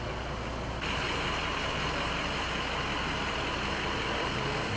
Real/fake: real